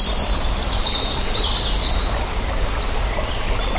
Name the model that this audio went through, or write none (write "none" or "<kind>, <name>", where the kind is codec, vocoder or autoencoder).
none